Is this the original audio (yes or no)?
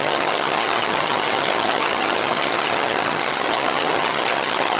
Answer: no